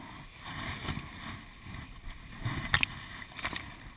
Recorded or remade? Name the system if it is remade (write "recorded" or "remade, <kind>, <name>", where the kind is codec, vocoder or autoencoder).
recorded